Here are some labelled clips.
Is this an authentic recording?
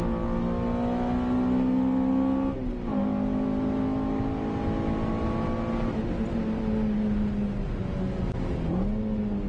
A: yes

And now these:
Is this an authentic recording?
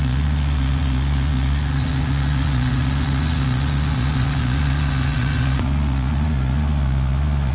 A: no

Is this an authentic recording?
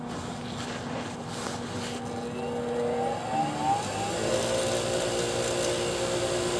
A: yes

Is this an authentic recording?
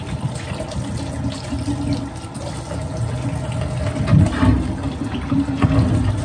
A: yes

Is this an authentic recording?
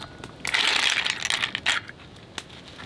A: yes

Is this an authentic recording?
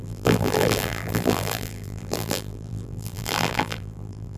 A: no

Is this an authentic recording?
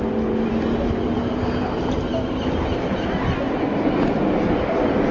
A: yes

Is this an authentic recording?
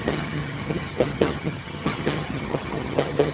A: no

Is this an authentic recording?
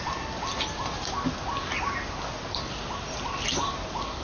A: yes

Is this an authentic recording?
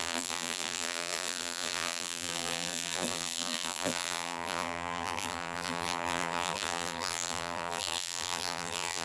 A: no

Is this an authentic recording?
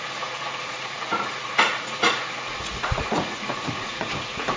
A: no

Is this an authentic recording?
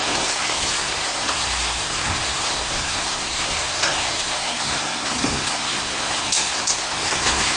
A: no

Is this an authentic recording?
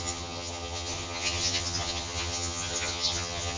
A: no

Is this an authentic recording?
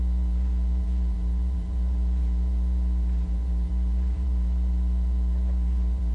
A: no